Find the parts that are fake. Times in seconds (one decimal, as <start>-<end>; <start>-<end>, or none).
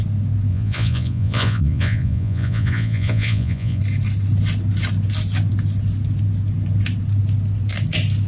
0.5-3.8